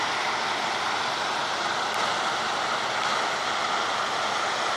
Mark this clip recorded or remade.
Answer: recorded